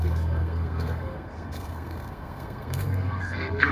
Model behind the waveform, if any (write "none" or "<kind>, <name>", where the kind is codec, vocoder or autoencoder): codec, SNAC